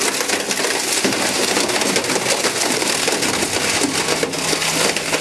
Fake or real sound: real